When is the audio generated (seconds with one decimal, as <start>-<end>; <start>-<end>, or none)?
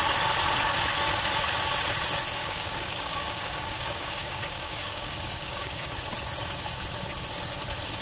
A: 2.4-5.9